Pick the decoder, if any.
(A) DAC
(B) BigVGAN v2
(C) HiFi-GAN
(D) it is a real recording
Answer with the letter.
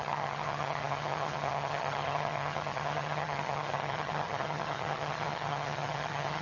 C